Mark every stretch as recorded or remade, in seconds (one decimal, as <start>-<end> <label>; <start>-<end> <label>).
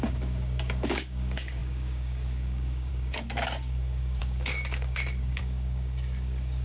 0.0-6.6 remade